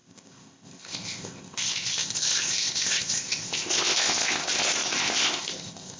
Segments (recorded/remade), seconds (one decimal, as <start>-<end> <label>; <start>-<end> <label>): 0.0-6.0 remade